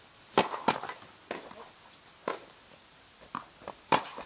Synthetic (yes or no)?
no